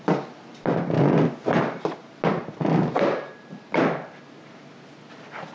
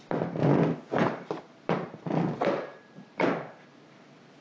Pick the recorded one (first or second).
first